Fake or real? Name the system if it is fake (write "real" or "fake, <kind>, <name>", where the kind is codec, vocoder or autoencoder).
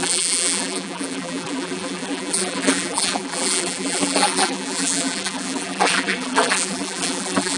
fake, vocoder, BigVGAN v2